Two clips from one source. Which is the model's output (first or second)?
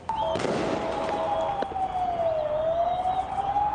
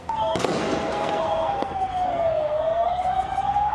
second